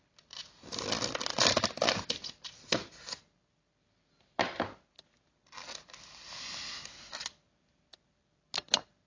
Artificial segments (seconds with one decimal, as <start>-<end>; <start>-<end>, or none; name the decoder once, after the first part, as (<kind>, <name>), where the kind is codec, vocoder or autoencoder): none